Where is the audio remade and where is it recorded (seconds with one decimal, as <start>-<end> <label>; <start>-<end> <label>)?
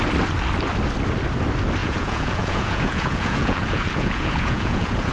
0.0-1.8 recorded; 1.8-5.1 remade